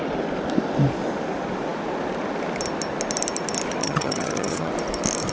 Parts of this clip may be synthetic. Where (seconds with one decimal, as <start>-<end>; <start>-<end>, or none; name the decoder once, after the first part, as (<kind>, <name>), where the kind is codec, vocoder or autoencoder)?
3.8-4.7 (vocoder, HiFi-GAN)